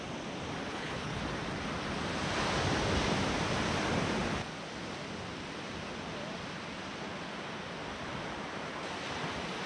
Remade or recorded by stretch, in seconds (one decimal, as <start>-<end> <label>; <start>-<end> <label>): 0.0-0.7 recorded; 0.7-1.2 remade; 1.2-9.7 recorded